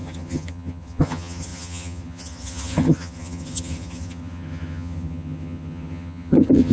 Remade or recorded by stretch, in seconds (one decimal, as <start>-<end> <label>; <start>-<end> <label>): 0.0-6.7 remade